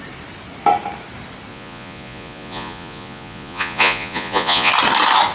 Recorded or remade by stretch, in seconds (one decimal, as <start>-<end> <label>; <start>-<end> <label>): 0.0-1.5 recorded; 1.5-4.7 remade; 4.7-5.3 recorded